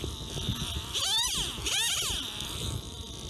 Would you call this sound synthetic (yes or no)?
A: no